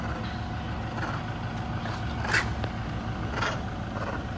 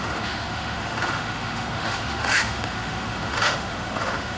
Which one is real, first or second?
first